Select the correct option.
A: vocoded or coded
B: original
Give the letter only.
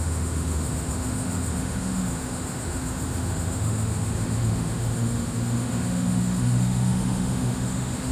A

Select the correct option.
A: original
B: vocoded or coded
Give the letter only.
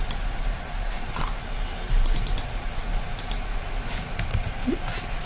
A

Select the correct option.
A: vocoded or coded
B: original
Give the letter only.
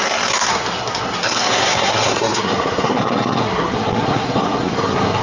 A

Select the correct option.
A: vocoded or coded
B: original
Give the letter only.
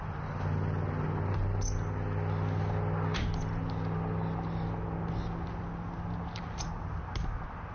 B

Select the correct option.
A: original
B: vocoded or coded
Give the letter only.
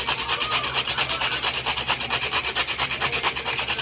A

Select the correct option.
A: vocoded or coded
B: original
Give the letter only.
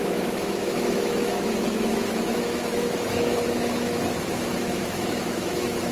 A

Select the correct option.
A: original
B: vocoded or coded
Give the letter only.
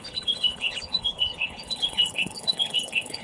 B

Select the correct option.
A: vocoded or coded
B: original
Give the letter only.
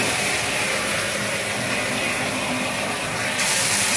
B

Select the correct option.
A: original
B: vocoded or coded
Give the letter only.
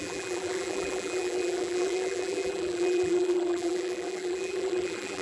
B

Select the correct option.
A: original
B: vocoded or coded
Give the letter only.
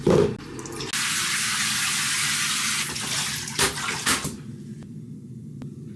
A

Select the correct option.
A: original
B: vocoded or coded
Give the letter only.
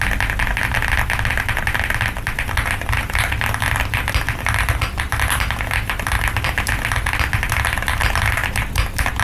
A